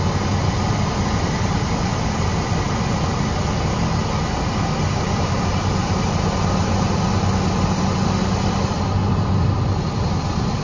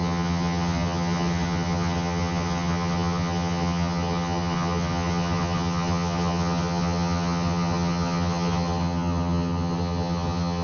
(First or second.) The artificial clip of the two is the second